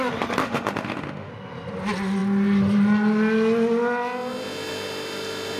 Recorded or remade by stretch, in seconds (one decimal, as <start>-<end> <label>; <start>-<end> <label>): 0.0-0.4 recorded; 0.4-1.3 remade; 1.3-5.6 recorded